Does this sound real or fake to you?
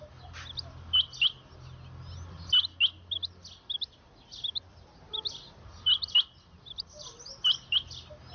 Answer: real